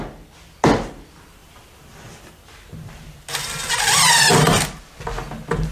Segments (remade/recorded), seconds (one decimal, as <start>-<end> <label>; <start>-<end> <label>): 0.0-5.7 recorded